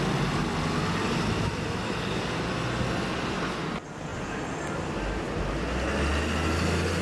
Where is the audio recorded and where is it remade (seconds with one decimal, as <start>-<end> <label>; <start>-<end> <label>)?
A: 0.0-7.0 recorded